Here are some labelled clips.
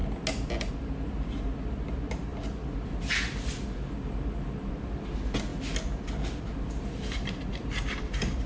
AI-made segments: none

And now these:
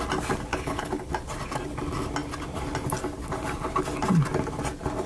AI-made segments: 0.5-1.1 (codec, HILCodec)

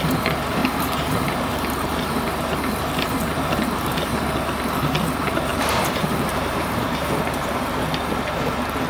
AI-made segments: 0.6-4.3 (vocoder, BigVGAN v2); 5.5-7.8